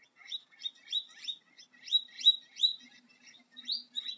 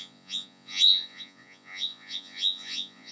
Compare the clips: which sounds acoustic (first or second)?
first